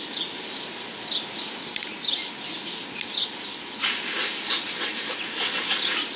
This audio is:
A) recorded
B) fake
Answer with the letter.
A